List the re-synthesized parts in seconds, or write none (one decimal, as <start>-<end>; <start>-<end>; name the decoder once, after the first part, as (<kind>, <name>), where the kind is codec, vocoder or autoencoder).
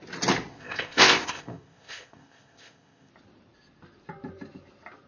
0.5-3.1 (codec, ZipCodec)